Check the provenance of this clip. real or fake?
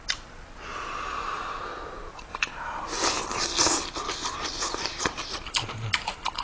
real